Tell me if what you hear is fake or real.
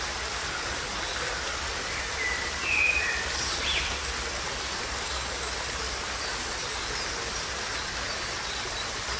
real